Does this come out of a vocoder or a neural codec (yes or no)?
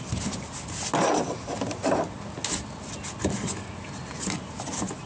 no